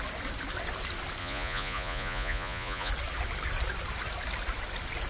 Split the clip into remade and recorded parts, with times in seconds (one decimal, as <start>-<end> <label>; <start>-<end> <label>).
0.0-1.2 recorded; 1.2-2.9 remade; 2.9-5.1 recorded